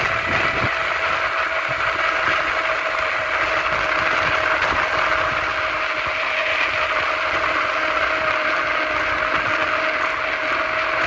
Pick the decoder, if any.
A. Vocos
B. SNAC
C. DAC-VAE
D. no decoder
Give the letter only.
D